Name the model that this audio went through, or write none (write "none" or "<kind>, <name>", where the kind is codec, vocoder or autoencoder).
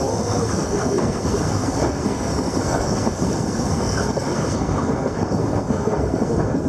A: codec, SNAC